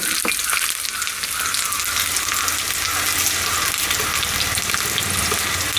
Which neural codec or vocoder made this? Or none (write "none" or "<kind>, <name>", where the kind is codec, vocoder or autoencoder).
none